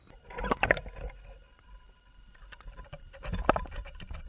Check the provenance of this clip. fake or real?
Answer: real